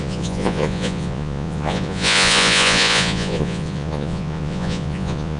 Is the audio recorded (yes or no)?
no